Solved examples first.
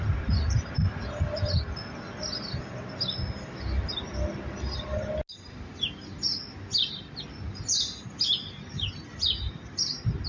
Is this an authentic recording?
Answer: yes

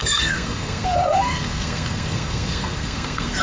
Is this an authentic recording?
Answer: no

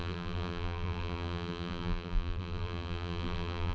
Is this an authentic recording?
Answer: no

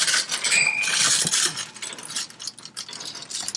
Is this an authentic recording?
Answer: yes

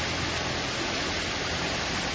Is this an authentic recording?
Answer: yes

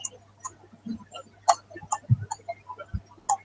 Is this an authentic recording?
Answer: yes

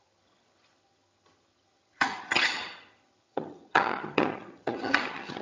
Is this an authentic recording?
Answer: no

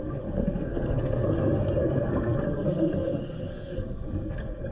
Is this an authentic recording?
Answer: no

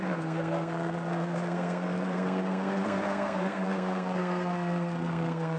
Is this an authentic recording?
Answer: no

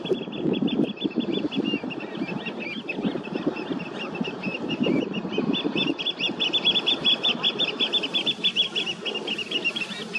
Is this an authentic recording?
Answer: no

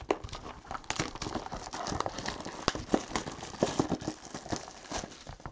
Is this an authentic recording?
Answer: yes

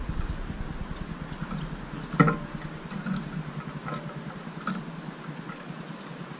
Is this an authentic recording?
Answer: yes